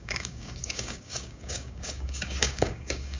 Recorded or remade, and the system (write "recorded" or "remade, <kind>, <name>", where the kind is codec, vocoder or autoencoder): remade, codec, DAC